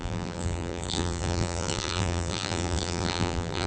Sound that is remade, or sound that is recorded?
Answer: remade